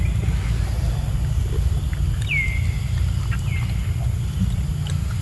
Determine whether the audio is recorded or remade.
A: recorded